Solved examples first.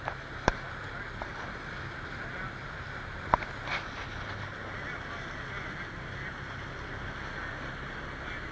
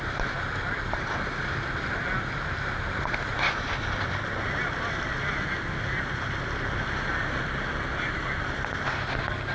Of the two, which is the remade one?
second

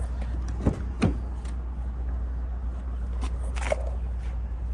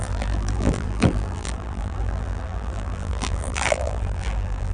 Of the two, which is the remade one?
second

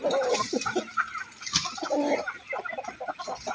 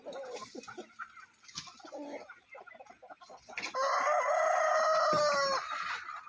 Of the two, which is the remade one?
first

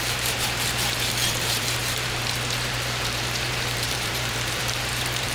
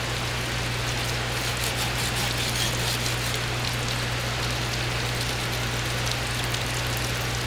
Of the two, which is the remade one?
first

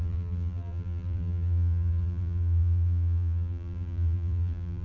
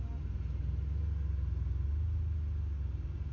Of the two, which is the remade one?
first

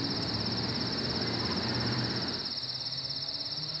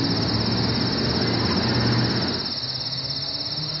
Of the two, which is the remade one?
first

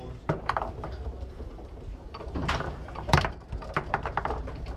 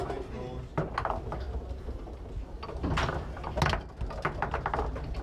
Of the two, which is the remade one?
first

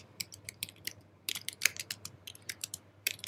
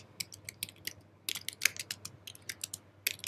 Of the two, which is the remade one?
first